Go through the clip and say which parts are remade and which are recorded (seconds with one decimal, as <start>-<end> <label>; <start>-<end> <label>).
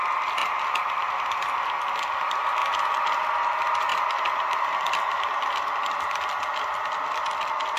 0.0-3.9 recorded; 3.9-4.9 remade; 4.9-7.8 recorded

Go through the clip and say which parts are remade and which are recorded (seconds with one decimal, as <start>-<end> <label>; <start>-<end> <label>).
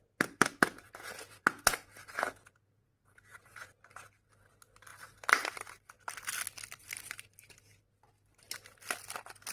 0.0-0.7 recorded; 0.7-3.8 remade; 3.8-9.5 recorded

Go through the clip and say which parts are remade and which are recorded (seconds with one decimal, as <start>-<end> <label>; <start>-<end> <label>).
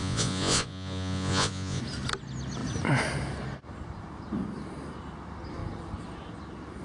0.0-1.8 remade; 1.8-6.8 recorded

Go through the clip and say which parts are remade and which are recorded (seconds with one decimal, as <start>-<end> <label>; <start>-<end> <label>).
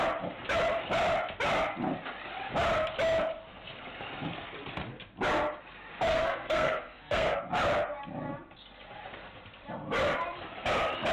0.0-6.1 recorded; 6.1-7.5 remade; 7.5-11.1 recorded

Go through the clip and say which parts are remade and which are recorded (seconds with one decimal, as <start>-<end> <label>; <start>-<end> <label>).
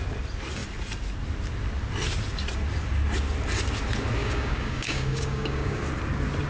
0.0-4.2 recorded; 4.2-5.8 remade; 5.8-6.5 recorded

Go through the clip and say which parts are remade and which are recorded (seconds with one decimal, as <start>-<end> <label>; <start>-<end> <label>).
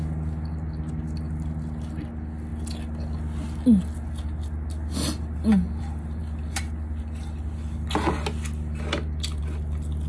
0.0-10.1 recorded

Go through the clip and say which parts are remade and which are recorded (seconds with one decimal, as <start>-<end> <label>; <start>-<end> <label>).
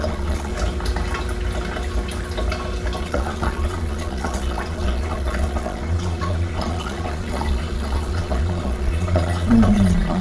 0.0-0.5 remade; 0.5-3.0 recorded; 3.0-10.2 remade